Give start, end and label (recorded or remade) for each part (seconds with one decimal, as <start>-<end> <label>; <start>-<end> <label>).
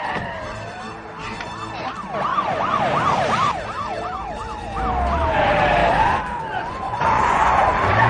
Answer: 0.0-2.3 recorded; 2.3-2.8 remade; 2.8-5.8 recorded; 5.8-8.1 remade